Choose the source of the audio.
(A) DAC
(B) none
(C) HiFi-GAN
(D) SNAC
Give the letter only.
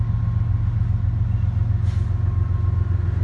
B